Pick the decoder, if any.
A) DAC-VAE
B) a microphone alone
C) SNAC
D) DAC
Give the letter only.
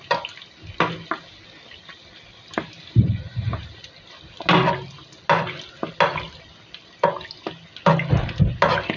B